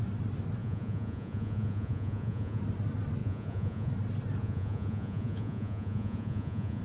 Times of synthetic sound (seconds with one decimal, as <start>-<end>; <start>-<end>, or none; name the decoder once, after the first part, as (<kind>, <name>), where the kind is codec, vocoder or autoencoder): 0.6-2.6 (vocoder, Vocos); 3.2-3.9; 4.4-6.8